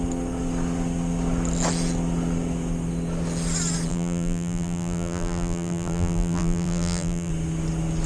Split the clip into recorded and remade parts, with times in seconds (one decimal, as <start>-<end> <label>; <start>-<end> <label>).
0.0-3.9 recorded; 3.9-7.3 remade; 7.3-8.1 recorded